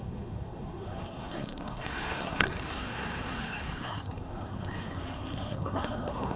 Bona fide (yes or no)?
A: no